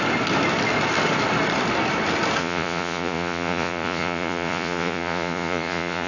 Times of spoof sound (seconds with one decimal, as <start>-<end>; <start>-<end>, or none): 2.4-6.1